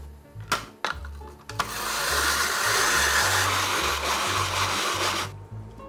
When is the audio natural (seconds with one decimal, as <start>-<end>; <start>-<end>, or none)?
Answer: 0.0-5.9